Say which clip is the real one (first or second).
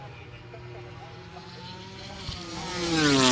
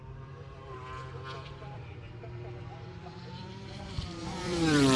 first